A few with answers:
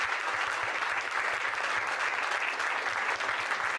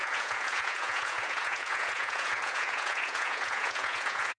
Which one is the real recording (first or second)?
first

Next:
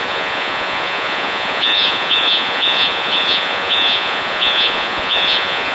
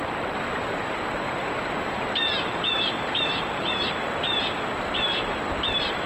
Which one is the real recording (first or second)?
second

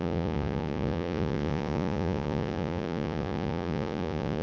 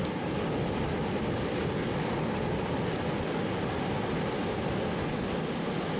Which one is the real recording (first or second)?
second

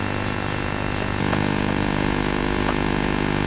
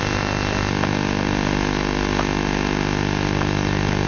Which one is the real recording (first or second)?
second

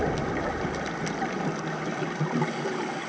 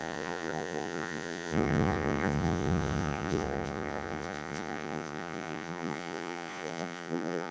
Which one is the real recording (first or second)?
first